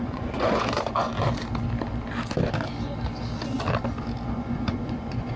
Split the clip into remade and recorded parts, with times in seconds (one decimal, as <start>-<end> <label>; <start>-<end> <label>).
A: 0.0-1.1 remade; 1.1-4.3 recorded; 4.3-5.4 remade